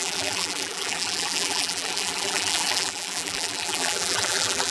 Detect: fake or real fake